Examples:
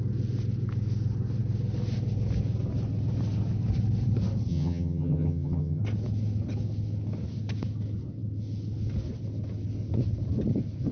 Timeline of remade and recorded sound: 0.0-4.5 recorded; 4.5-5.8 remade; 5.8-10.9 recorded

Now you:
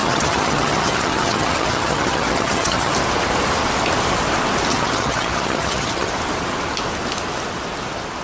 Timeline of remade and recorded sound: 0.0-2.9 remade; 2.9-4.7 recorded; 4.7-6.1 remade; 6.1-8.2 recorded

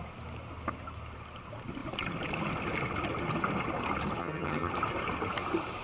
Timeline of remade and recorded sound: 0.0-4.2 recorded; 4.2-4.7 remade; 4.7-5.8 recorded

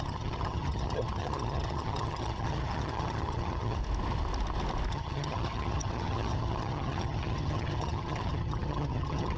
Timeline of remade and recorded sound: 0.0-3.8 remade; 3.8-4.9 recorded; 4.9-9.4 remade